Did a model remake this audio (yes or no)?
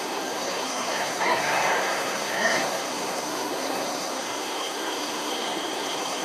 yes